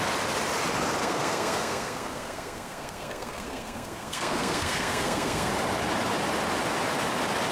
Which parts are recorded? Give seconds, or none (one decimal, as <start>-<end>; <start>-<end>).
0.0-1.0; 5.5-7.5